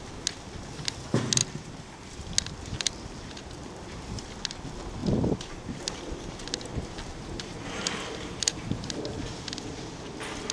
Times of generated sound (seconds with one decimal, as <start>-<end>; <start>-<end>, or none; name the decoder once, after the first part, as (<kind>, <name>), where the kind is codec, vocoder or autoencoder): 1.4-2.3 (vocoder, BigVGAN v2); 5.0-5.8; 6.7-8.9